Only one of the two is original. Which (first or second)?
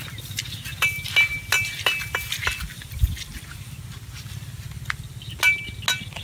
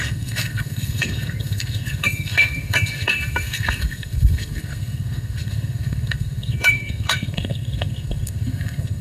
first